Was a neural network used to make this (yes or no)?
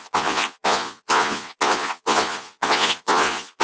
yes